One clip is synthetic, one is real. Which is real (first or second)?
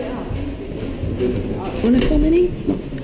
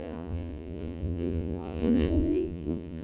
first